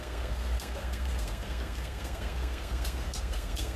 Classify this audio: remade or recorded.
remade